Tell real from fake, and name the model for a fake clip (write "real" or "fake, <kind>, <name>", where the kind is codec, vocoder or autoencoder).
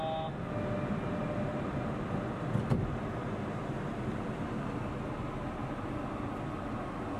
real